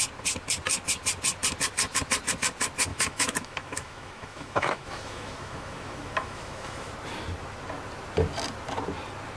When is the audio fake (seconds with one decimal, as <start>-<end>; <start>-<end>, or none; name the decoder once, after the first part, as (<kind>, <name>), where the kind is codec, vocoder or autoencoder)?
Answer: 2.9-6.9 (autoencoder, DAC-VAE)